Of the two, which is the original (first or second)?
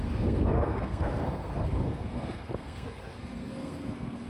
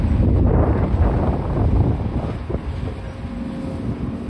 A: second